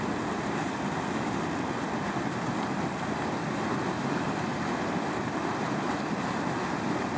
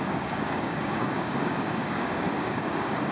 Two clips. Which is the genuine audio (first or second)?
first